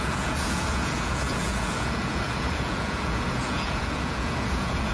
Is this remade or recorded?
remade